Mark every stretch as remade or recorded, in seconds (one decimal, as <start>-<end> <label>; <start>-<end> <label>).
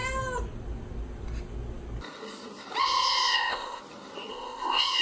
0.0-2.8 recorded; 2.8-3.8 remade; 3.8-4.3 recorded; 4.3-5.0 remade